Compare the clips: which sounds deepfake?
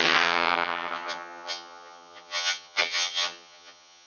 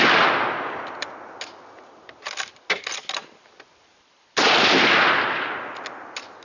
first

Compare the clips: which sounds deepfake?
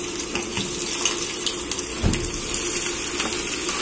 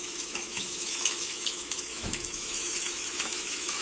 second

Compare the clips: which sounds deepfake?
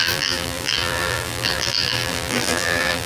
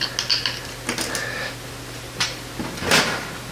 first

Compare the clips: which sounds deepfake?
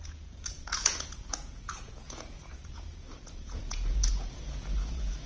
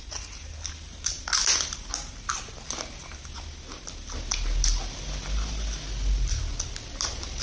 first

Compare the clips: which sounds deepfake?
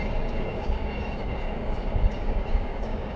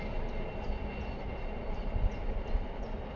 first